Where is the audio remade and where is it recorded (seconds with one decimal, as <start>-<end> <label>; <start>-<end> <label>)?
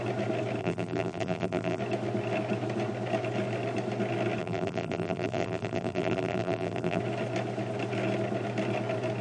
0.0-0.6 recorded; 0.6-1.8 remade; 1.8-4.4 recorded; 4.4-7.0 remade; 7.0-9.2 recorded